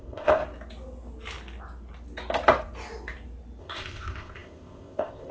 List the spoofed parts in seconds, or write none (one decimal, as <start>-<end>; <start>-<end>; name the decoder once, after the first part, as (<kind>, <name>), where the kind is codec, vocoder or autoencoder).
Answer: 0.0-0.4 (codec, ZipCodec); 3.6-5.3